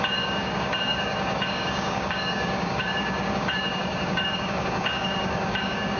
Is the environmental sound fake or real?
fake